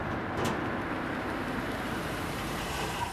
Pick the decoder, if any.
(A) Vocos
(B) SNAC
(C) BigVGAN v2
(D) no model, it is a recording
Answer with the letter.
C